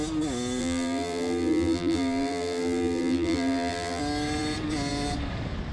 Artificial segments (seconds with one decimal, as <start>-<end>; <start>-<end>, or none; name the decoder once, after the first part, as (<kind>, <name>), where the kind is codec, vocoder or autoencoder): 0.6-4.0 (vocoder, BigVGAN v2)

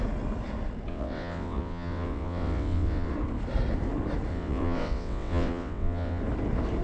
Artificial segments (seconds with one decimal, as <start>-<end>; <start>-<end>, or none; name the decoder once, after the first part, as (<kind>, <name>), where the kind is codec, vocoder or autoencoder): 0.9-3.1 (vocoder, WaveNeXt); 4.3-6.2